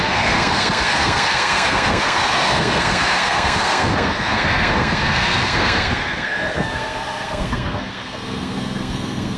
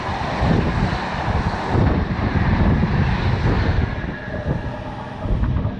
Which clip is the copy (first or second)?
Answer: first